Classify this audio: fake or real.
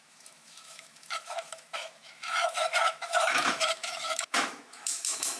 fake